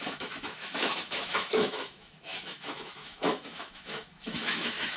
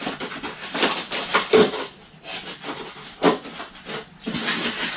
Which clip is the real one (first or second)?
second